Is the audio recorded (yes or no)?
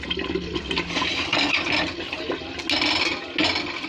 yes